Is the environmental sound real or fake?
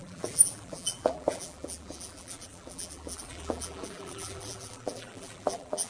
fake